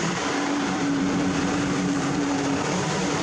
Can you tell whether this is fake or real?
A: fake